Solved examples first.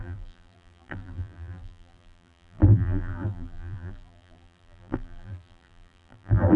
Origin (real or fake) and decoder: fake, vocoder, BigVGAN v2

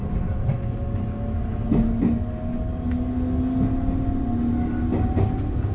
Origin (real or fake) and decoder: real